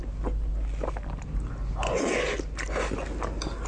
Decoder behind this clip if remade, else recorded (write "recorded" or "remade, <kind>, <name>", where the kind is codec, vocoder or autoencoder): recorded